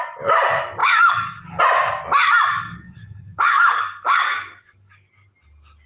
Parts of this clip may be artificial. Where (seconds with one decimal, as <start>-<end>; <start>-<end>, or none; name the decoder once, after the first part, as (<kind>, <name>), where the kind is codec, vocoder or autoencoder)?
0.8-1.6 (codec, DAC); 2.5-5.1

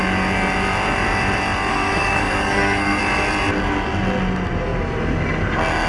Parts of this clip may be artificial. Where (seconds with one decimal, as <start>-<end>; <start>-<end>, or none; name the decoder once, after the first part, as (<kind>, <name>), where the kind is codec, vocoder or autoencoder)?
1.7-3.0 (codec, SNAC)